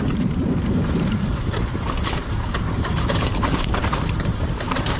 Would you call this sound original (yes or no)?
no